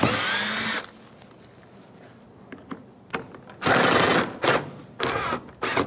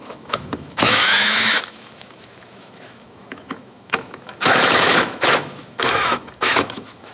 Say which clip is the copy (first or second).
second